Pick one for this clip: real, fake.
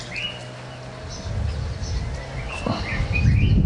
real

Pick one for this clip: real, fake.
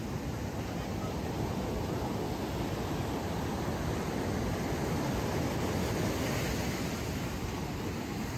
real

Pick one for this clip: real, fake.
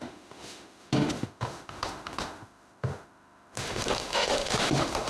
fake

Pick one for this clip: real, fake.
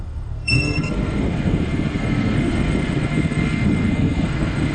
fake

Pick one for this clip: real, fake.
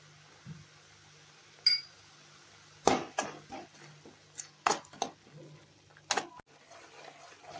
real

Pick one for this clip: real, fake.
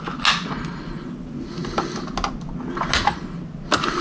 real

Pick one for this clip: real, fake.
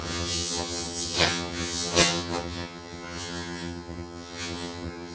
fake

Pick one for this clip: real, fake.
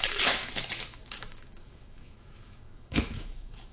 fake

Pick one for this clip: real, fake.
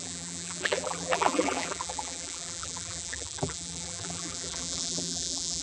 fake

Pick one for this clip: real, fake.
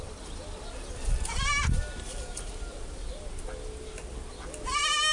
real